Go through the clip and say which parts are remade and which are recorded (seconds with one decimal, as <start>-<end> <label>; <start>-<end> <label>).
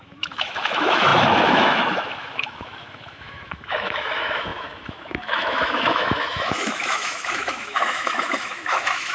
0.0-9.1 remade